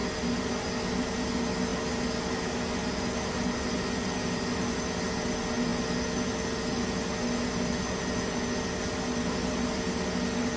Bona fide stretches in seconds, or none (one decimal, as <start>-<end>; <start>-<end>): 0.0-10.6